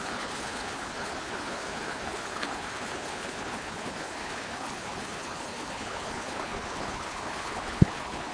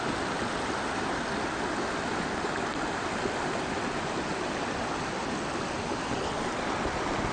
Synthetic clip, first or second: first